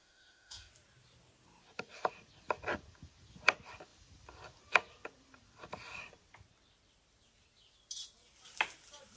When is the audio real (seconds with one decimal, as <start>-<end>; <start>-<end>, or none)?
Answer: 0.7-9.2